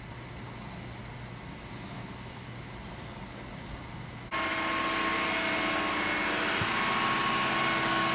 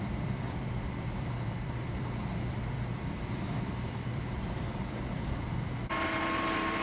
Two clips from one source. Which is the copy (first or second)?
second